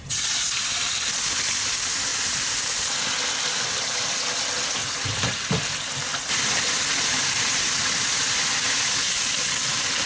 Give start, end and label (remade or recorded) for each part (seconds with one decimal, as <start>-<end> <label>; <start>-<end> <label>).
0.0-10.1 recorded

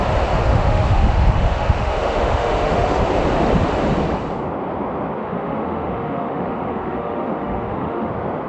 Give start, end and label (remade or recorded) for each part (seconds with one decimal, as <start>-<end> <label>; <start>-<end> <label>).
0.0-0.4 recorded; 0.4-3.0 remade; 3.0-5.2 recorded; 5.2-8.1 remade; 8.1-8.5 recorded

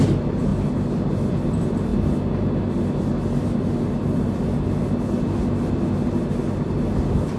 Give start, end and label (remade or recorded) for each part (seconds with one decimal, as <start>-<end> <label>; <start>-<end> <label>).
0.0-7.4 recorded

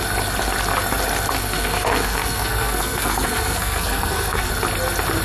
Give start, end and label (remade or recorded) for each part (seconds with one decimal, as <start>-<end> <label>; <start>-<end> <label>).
0.0-1.4 recorded; 1.4-4.5 remade; 4.5-5.2 recorded

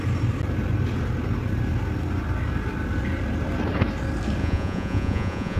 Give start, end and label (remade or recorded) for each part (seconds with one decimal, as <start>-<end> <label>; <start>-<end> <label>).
0.0-4.4 recorded; 4.4-5.6 remade

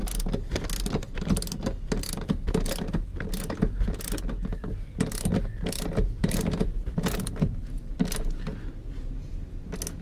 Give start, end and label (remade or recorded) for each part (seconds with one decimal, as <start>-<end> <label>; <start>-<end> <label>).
0.0-10.0 recorded

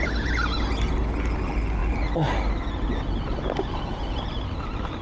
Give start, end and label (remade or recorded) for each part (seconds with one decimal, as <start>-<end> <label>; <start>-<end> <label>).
0.0-5.0 recorded